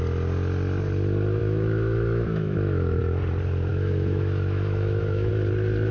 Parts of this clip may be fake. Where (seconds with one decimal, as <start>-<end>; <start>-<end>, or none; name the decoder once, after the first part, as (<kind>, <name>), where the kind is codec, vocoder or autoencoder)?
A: 1.4-3.0 (autoencoder, DAC-VAE); 3.7-5.3